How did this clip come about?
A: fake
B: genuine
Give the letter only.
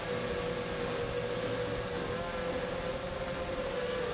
B